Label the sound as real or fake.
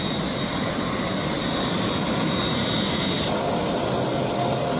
real